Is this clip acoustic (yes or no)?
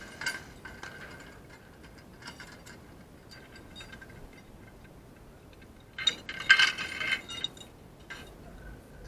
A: yes